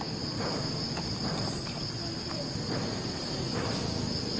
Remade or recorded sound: recorded